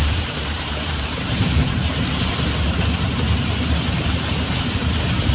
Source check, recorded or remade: remade